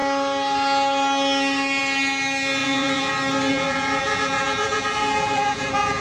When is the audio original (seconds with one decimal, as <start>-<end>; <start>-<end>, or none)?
0.0-2.6; 3.1-3.5